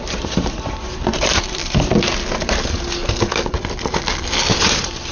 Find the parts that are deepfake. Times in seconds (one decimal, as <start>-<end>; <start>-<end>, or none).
0.0-1.6; 4.6-5.1